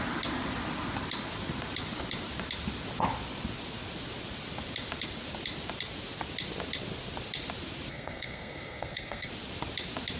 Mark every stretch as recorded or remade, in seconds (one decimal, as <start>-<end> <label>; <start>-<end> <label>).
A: 0.0-7.9 recorded; 7.9-9.3 remade; 9.3-10.2 recorded